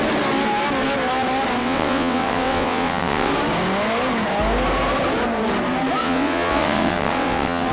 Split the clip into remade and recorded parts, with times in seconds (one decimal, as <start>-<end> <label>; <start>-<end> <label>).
0.0-1.6 recorded; 1.6-3.3 remade; 3.3-6.0 recorded; 6.0-7.7 remade

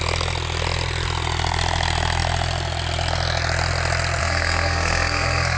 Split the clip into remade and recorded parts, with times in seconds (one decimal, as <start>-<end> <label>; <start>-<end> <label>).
0.0-4.2 recorded; 4.2-5.6 remade

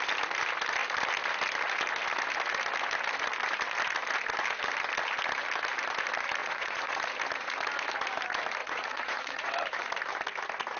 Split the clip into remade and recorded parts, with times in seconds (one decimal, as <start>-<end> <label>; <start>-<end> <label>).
0.0-6.4 recorded; 6.4-7.0 remade; 7.0-8.6 recorded; 8.6-9.5 remade; 9.5-10.8 recorded

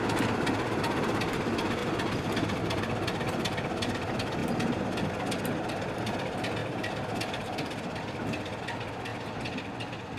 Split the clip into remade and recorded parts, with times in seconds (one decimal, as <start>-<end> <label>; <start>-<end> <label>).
0.0-6.6 recorded; 6.6-8.6 remade; 8.6-10.2 recorded